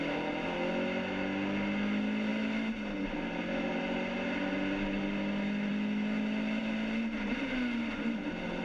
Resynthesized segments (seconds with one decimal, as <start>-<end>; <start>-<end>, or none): none